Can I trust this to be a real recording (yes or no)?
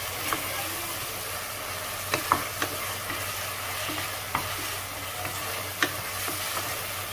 yes